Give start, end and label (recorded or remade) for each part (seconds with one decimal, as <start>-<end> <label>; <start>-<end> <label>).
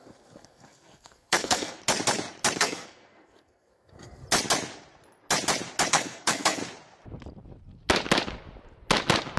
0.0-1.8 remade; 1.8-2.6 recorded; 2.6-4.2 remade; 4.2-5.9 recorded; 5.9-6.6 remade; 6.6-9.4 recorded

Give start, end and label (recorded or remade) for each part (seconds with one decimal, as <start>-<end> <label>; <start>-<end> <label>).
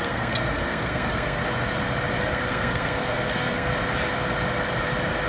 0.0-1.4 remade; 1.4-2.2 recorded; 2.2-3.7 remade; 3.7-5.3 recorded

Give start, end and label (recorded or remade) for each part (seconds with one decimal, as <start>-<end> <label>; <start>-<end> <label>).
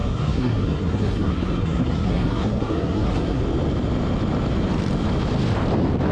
0.0-3.4 remade; 3.4-6.1 recorded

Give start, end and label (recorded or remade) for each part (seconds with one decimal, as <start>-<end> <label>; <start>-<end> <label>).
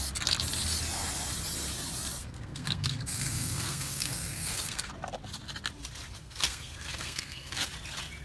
0.0-2.2 recorded; 2.2-4.9 remade; 4.9-6.2 recorded; 6.2-7.7 remade; 7.7-8.2 recorded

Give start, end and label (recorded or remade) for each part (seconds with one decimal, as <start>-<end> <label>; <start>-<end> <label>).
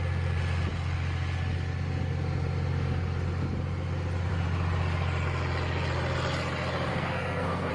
0.0-6.9 recorded; 6.9-7.7 remade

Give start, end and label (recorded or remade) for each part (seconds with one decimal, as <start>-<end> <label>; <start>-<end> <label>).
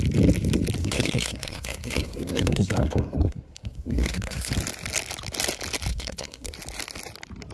0.0-0.8 recorded; 0.8-4.5 remade; 4.5-5.9 recorded; 5.9-6.5 remade; 6.5-7.5 recorded